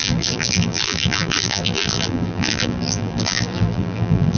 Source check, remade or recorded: remade